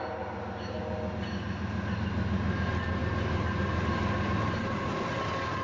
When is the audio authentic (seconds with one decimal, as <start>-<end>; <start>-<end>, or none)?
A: 0.0-5.6